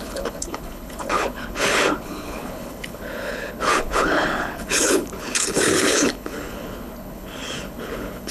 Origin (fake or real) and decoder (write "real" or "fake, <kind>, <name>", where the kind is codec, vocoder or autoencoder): fake, codec, HILCodec